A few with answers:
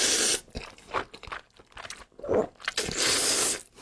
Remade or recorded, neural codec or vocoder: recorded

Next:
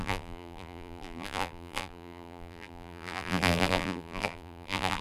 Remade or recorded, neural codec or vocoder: remade, vocoder, BigVGAN v2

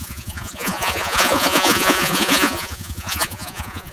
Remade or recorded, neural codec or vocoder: remade, vocoder, Vocos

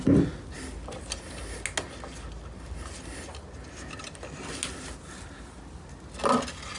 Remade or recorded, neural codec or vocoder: recorded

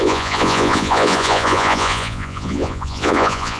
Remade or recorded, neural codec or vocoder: remade, vocoder, Vocos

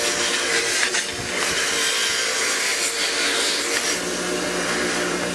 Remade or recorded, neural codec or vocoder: recorded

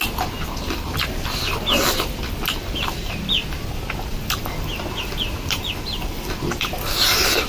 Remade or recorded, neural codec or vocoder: remade, vocoder, BigVGAN v2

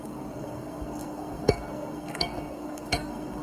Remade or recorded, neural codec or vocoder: remade, codec, SNAC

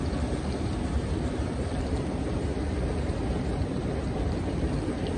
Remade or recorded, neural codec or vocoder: remade, vocoder, BigVGAN v2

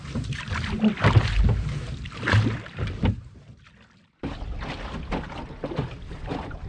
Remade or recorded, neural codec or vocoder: recorded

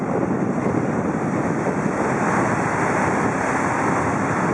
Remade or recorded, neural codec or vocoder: recorded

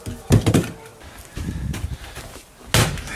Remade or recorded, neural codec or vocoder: recorded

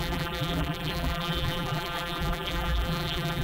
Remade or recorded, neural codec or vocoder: remade, vocoder, BigVGAN v2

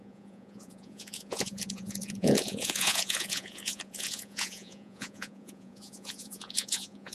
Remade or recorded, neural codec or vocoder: remade, vocoder, Vocos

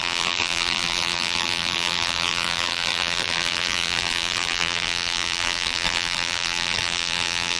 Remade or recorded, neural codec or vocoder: remade, vocoder, BigVGAN v2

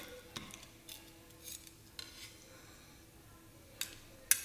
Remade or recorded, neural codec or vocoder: recorded